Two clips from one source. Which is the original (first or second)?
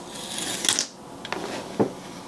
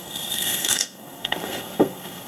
first